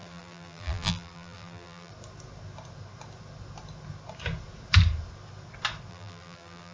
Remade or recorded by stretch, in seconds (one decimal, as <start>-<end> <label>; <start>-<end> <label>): 0.0-1.9 remade; 1.9-5.9 recorded; 5.9-6.7 remade

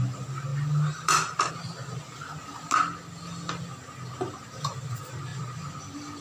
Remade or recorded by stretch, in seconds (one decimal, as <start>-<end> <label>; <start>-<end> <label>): 0.0-0.5 recorded; 0.5-1.5 remade; 1.5-6.2 recorded

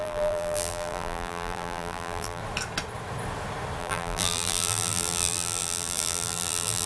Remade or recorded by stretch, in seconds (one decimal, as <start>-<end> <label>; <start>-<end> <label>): 0.0-2.4 remade; 2.4-3.8 recorded; 3.8-6.9 remade

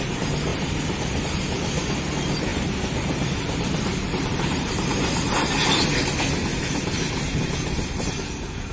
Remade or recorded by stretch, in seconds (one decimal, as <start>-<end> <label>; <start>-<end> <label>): 0.0-0.5 recorded; 0.5-1.2 remade; 1.2-2.5 recorded; 2.5-5.3 remade; 5.3-6.5 recorded; 6.5-8.2 remade; 8.2-8.7 recorded